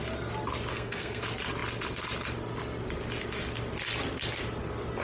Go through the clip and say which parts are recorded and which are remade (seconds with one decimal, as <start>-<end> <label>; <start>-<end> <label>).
0.0-0.7 recorded; 0.7-1.2 remade; 1.2-5.0 recorded